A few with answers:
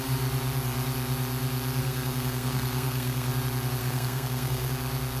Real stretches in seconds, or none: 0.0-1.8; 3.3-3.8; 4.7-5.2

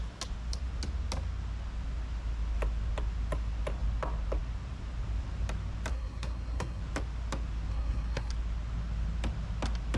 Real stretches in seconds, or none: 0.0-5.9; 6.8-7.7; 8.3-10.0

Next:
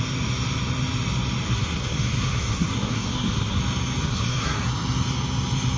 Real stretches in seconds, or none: 0.0-1.5; 3.6-4.0; 4.7-5.8

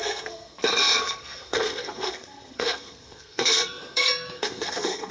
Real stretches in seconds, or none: none